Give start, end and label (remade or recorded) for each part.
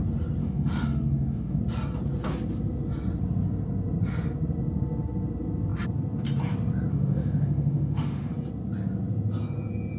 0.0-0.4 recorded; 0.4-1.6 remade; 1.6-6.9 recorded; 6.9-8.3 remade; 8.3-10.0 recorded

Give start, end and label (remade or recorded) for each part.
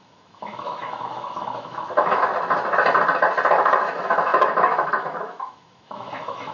0.0-2.3 remade; 2.3-3.5 recorded; 3.5-6.5 remade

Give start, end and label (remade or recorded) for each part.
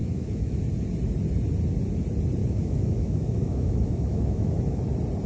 0.0-0.6 remade; 0.6-2.4 recorded; 2.4-4.8 remade; 4.8-5.3 recorded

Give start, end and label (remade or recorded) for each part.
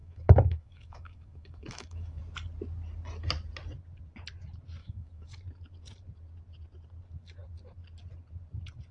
0.0-2.2 remade; 2.2-4.8 recorded; 4.8-5.3 remade; 5.3-8.9 recorded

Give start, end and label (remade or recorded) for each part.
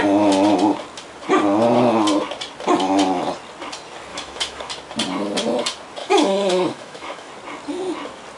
0.0-4.1 recorded; 4.1-4.7 remade; 4.7-6.0 recorded; 6.0-7.3 remade; 7.3-8.4 recorded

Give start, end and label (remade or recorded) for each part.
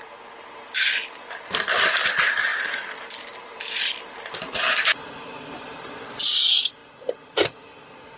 0.0-8.2 recorded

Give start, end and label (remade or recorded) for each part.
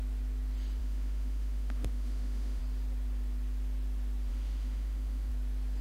0.0-0.8 recorded; 0.8-2.6 remade; 2.6-4.3 recorded; 4.3-5.3 remade; 5.3-5.8 recorded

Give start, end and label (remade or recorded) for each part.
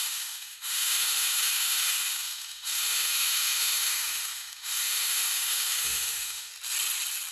0.0-6.5 remade; 6.5-7.3 recorded